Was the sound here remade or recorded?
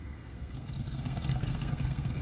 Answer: remade